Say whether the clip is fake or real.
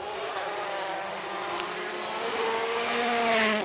real